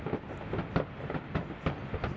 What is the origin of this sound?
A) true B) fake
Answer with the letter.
A